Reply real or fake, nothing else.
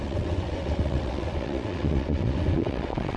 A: fake